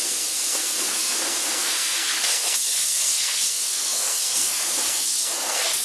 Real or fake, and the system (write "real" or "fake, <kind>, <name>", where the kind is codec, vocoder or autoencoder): fake, codec, SNAC